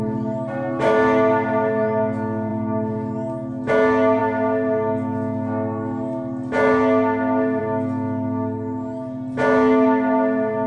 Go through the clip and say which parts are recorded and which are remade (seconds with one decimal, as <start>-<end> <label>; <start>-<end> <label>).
0.0-10.7 recorded